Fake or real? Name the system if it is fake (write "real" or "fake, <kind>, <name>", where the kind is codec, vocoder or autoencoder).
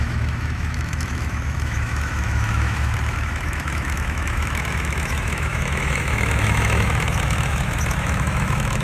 fake, autoencoder, DAC-VAE